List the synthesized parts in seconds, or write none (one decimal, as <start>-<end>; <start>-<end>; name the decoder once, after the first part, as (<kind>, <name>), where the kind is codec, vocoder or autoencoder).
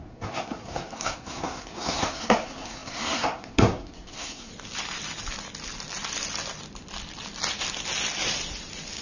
0.0-4.5 (codec, SNAC)